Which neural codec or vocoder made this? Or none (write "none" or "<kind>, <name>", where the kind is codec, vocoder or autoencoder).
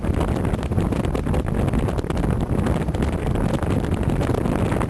none